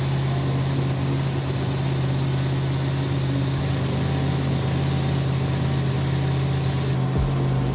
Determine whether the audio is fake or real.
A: real